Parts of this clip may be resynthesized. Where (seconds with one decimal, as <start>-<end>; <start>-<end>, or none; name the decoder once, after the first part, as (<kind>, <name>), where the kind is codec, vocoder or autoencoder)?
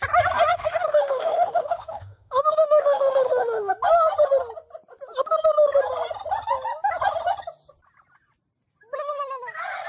0.5-3.7 (autoencoder, DAC-VAE)